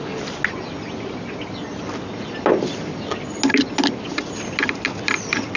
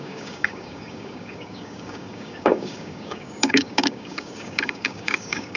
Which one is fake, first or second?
second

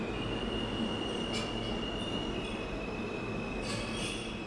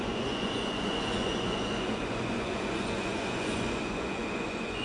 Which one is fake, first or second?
second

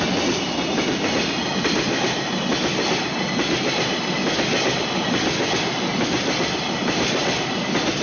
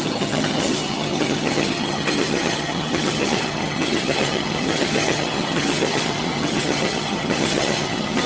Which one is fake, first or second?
second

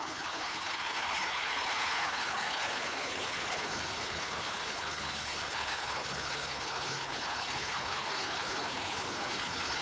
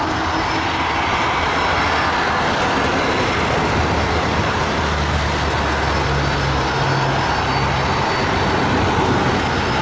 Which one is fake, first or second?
first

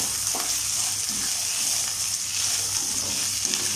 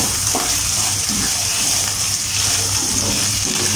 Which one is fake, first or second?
second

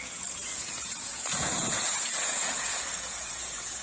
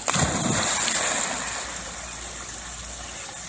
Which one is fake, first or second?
first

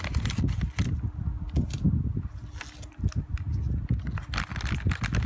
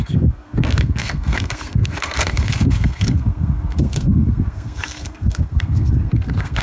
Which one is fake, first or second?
second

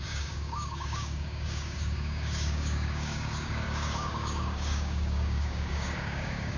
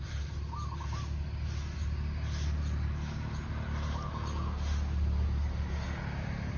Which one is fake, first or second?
first